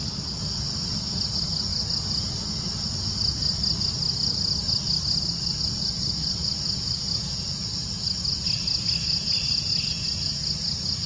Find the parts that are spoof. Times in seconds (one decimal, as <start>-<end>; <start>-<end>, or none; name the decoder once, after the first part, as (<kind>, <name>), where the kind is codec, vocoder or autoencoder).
0.0-0.6 (vocoder, BigVGAN v2)